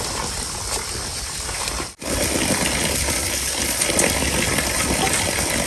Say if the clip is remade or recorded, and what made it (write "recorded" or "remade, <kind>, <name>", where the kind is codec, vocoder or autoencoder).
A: recorded